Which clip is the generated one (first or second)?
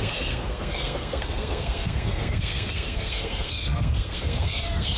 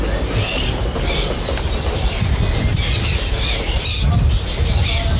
first